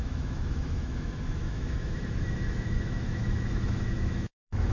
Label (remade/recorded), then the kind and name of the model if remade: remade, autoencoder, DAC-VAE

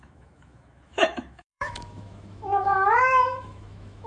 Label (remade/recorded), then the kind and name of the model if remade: remade, autoencoder, DAC-VAE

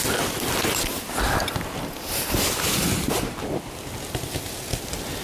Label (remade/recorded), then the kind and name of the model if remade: recorded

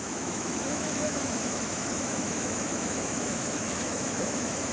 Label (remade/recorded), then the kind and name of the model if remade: remade, autoencoder, DAC-VAE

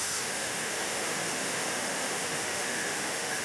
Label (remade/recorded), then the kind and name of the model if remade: remade, autoencoder, DAC-VAE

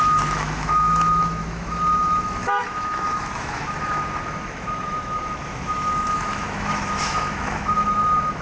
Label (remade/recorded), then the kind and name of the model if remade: remade, autoencoder, DAC-VAE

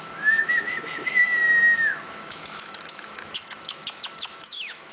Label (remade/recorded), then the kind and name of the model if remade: remade, autoencoder, DAC-VAE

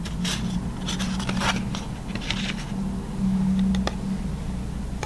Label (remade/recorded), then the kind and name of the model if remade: recorded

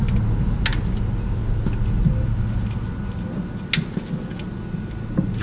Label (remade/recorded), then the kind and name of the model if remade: recorded